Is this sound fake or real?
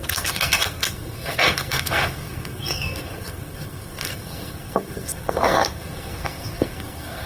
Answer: fake